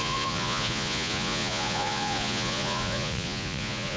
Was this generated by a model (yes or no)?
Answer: yes